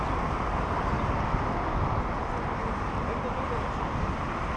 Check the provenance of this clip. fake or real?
real